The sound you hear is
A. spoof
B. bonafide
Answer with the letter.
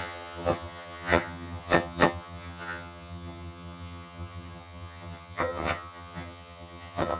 A